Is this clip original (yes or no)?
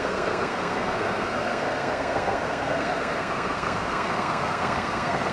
no